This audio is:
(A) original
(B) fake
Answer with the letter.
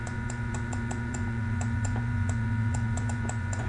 B